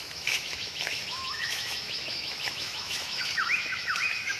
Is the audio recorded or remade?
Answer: remade